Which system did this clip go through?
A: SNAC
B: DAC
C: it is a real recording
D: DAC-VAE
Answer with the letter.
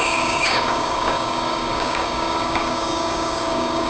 B